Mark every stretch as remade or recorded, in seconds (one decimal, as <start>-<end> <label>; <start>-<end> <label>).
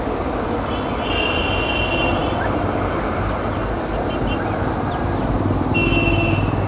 0.0-6.7 recorded